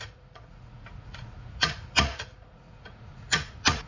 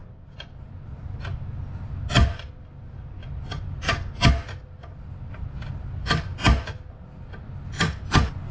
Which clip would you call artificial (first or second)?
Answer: first